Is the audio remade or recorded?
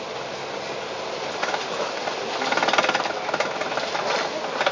recorded